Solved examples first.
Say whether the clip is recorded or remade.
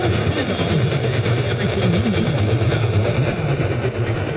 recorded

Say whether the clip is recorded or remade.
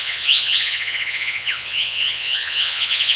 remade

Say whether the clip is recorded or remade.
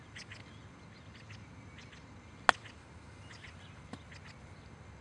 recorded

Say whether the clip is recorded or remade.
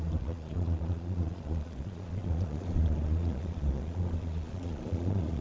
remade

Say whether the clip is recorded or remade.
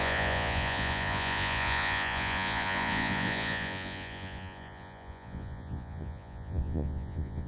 remade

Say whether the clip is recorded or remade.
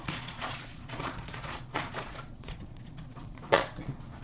remade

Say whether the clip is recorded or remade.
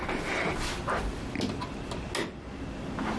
recorded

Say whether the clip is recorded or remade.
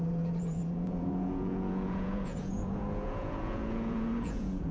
remade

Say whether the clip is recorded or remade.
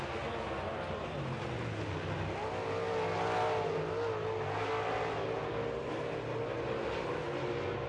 recorded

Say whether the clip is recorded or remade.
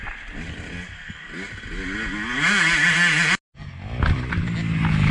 recorded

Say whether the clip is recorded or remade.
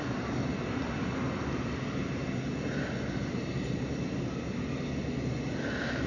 recorded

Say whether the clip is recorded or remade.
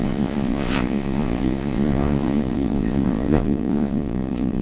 remade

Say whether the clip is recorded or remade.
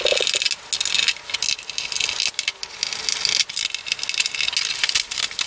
recorded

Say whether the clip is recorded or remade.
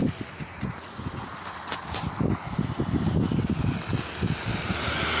recorded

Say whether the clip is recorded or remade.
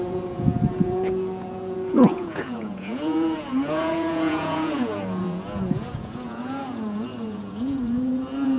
remade